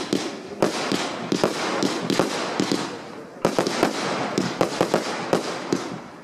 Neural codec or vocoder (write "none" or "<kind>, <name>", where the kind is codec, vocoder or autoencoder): none